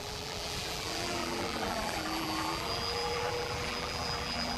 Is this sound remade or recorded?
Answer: remade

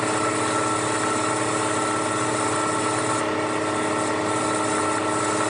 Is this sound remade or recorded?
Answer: recorded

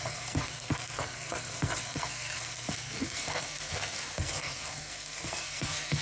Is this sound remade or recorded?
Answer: remade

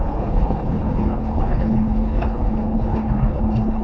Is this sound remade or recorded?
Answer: remade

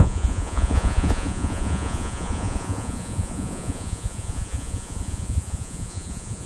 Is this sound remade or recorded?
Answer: remade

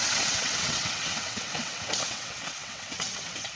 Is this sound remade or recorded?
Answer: remade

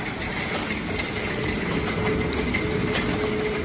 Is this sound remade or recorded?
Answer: recorded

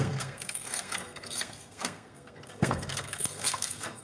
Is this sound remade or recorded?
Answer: remade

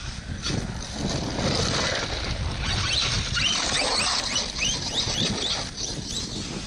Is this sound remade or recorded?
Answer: recorded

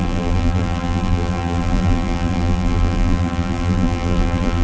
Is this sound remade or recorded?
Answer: remade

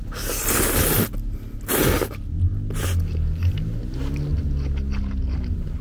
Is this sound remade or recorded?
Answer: recorded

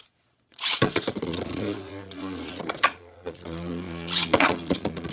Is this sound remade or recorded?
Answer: remade